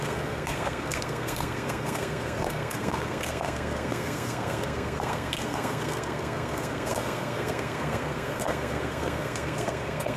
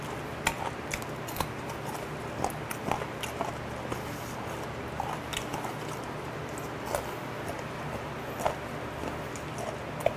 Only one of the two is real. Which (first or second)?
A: second